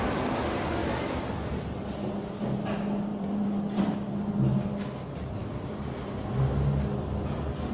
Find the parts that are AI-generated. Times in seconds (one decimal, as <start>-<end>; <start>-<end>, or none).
0.8-1.8; 3.1-3.9; 5.4-6.4